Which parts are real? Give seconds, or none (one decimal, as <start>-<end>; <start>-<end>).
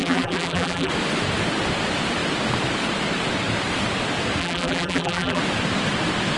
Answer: 0.9-4.4; 5.4-6.4